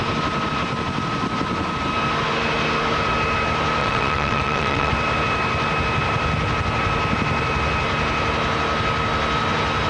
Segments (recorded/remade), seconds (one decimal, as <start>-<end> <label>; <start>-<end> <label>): 0.0-3.8 recorded; 3.8-4.9 remade; 4.9-9.9 recorded